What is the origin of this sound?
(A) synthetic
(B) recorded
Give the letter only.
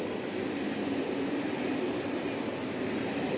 B